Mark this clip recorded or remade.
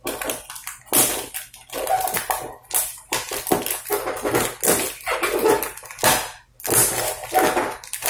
recorded